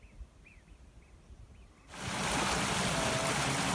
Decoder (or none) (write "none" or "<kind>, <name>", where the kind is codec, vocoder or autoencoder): none